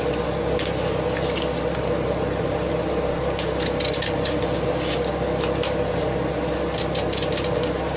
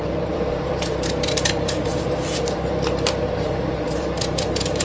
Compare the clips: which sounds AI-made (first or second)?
second